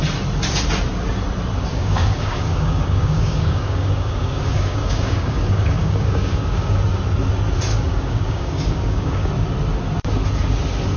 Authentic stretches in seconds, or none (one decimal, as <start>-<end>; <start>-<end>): 0.0-1.7; 6.7-7.7; 9.3-11.0